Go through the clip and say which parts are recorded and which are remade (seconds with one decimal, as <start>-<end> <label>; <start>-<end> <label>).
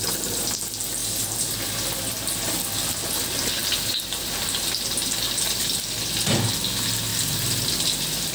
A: 0.0-1.0 recorded; 1.0-2.1 remade; 2.1-3.6 recorded; 3.6-6.5 remade; 6.5-8.3 recorded